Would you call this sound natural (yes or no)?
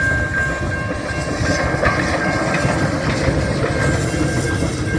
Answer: yes